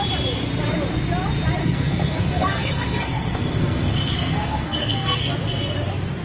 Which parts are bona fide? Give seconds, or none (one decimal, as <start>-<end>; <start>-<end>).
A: 0.0-1.6; 5.3-6.2